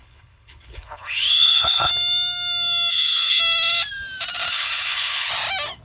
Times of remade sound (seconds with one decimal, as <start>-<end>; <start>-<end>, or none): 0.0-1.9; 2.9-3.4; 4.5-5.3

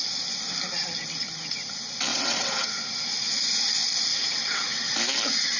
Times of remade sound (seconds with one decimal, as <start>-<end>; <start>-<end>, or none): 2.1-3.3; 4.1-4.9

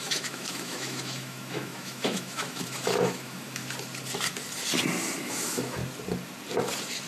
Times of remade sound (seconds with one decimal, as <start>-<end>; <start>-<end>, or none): 0.0-3.6; 5.2-5.8

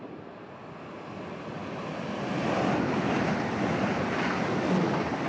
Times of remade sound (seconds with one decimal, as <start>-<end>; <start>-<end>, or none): none

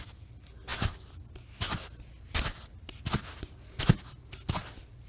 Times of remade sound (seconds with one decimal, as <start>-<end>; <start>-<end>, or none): none

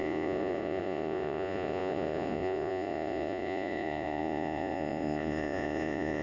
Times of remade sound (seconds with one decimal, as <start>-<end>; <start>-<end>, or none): 0.0-6.2

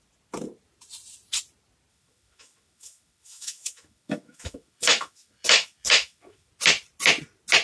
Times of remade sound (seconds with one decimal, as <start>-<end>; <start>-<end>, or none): 1.9-6.5